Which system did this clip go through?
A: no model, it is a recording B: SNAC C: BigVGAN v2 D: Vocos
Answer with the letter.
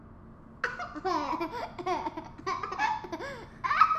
A